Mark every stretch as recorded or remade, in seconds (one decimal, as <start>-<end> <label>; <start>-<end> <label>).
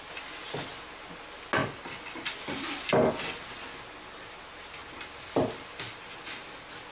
0.0-6.9 recorded